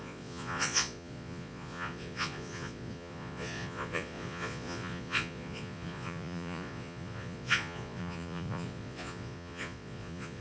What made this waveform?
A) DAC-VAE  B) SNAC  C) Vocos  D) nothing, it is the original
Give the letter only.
C